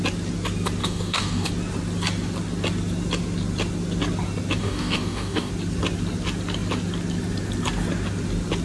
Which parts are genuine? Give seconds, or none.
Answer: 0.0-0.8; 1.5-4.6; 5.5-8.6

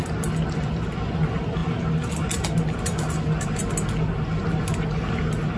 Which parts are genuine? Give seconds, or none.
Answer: 0.0-5.6

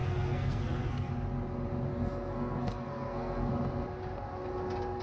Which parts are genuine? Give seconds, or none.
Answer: 1.1-1.9; 3.5-5.0

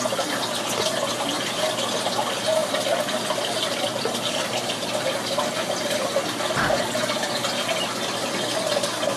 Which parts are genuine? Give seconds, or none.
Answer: 0.0-9.2

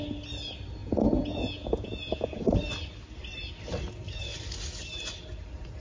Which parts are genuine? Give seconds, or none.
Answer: 0.0-0.8; 2.4-5.8